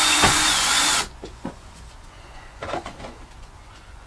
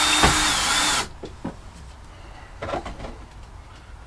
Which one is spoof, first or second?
first